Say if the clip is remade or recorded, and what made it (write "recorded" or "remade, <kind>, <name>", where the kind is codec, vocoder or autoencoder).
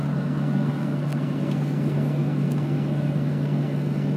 remade, codec, SNAC